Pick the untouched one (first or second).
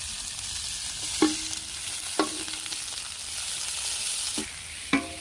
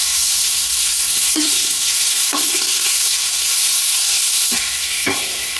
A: first